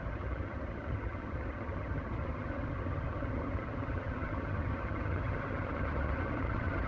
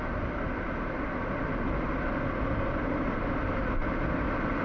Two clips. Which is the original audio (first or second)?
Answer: second